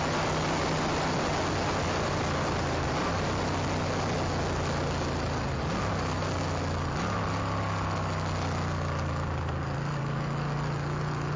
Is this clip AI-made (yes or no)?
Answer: no